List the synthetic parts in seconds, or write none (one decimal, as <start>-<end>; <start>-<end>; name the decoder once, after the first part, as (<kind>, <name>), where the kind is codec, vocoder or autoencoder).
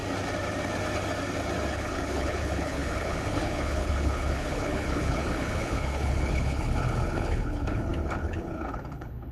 1.7-9.3 (codec, HILCodec)